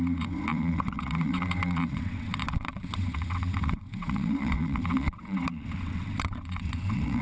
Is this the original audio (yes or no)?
no